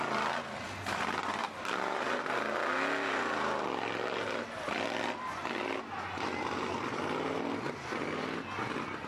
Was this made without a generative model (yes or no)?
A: yes